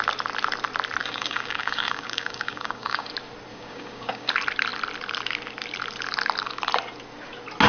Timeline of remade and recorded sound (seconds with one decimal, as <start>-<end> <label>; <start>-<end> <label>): 0.0-1.0 recorded; 1.0-3.1 remade; 3.1-3.5 recorded; 3.5-4.3 remade; 4.3-7.7 recorded